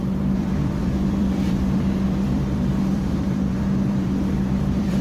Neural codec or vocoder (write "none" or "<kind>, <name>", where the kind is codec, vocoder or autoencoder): vocoder, BigVGAN v2